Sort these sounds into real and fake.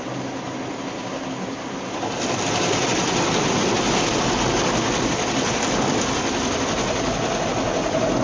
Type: real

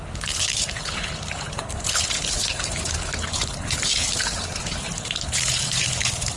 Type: fake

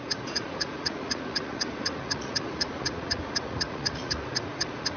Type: fake